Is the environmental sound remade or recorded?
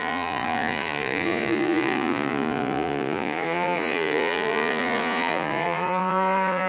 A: remade